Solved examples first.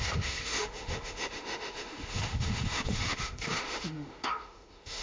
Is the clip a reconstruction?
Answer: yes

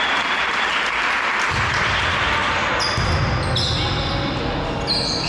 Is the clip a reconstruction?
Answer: no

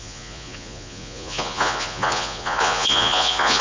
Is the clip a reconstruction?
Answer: yes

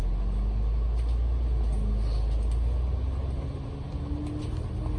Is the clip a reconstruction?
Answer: no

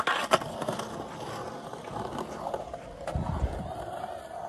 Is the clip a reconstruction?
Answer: no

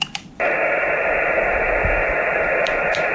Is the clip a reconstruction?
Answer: no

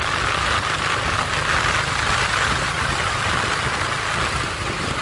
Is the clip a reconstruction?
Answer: no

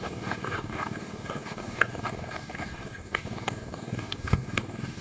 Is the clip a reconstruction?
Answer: yes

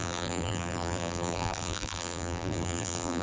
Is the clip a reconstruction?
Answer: yes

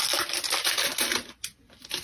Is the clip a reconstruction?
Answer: no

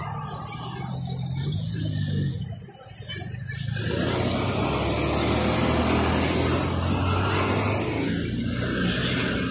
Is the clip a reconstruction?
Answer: no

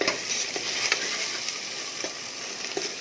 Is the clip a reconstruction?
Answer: no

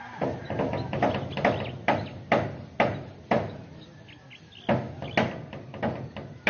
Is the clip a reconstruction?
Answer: no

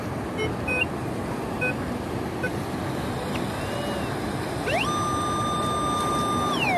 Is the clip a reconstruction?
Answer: no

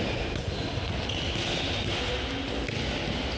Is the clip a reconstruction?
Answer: no